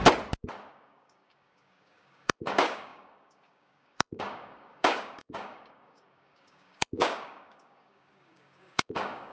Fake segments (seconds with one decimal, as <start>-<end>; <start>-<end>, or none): 0.7-9.3